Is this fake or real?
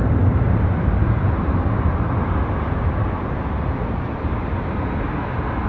real